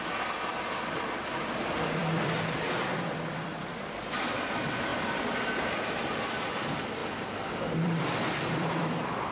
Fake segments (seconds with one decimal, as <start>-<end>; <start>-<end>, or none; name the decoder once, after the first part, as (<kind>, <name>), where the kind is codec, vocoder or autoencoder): 0.0-4.9 (vocoder, BigVGAN v2); 5.6-7.0; 7.8-9.3

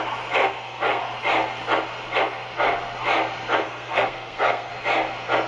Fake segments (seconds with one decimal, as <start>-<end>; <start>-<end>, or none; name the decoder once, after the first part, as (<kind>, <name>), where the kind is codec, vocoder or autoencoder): 0.4-1.0 (codec, SNAC); 3.6-4.7